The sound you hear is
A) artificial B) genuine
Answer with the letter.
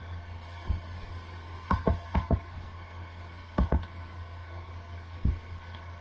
A